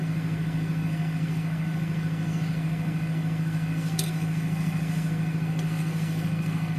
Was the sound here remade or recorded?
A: remade